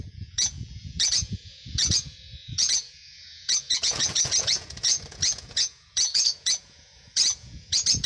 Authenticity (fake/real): fake